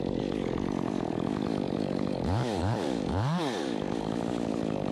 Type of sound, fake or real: fake